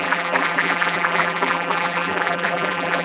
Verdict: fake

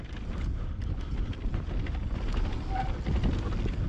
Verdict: real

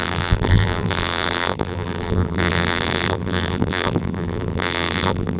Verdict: fake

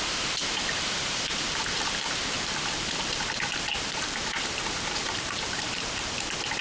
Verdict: fake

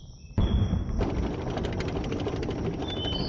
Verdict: fake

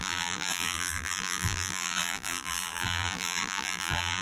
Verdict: fake